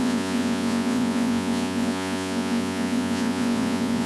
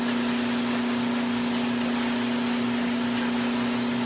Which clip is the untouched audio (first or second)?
second